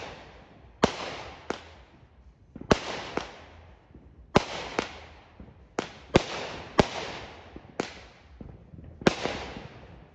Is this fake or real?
real